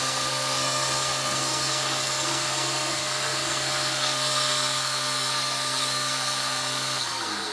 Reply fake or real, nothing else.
fake